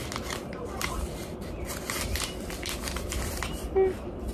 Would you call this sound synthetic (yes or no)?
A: no